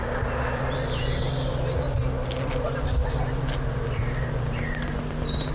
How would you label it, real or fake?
real